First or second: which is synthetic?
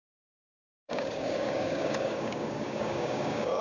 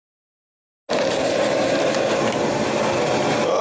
first